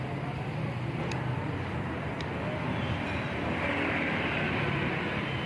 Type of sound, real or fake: fake